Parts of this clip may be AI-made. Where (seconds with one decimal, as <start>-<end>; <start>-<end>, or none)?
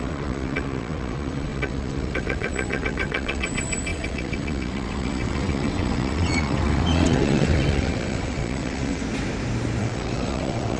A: 0.0-9.0; 9.8-10.8